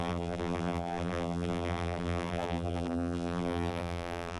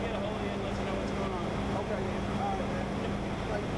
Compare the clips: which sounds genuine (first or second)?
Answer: second